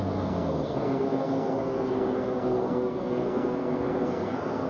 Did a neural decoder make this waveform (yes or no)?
yes